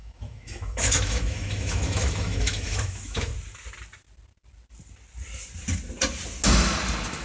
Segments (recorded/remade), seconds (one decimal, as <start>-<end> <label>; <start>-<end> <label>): 0.0-3.3 remade; 3.3-7.2 recorded